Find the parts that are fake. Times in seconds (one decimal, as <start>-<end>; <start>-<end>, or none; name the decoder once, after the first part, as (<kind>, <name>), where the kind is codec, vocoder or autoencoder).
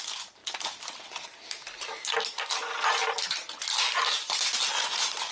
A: none